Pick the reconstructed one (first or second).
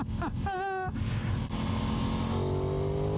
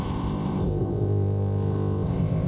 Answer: second